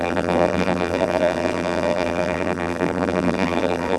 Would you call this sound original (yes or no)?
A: no